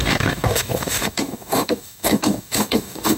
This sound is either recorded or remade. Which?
remade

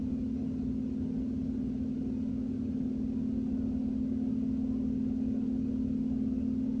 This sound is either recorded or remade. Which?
recorded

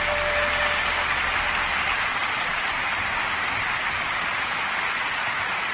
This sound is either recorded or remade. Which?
recorded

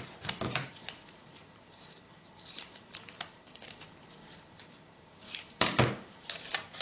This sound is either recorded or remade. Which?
remade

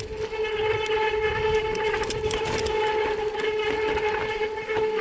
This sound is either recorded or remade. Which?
recorded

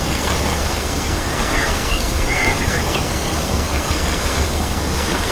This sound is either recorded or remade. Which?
remade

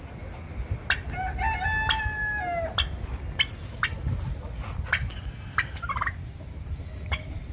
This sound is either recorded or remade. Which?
recorded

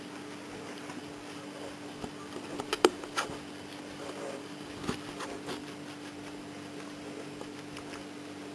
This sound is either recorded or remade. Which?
recorded